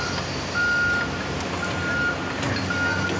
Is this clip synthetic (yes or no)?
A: no